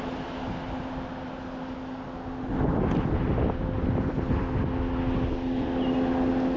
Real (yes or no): yes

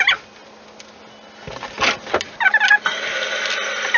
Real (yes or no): yes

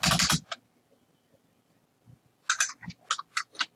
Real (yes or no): yes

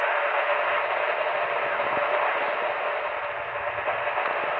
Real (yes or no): yes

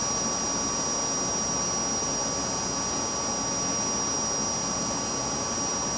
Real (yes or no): yes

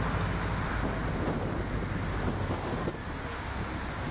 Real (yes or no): yes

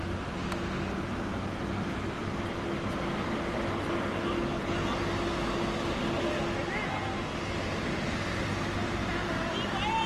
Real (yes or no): yes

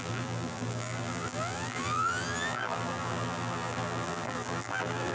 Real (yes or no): no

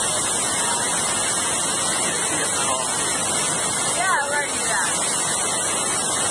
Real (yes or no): yes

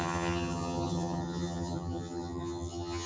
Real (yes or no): no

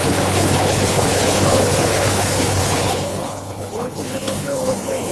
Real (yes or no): no